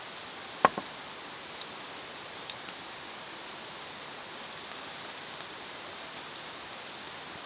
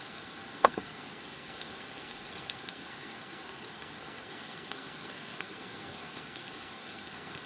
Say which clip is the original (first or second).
first